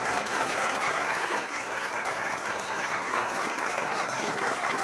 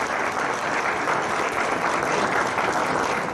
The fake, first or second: first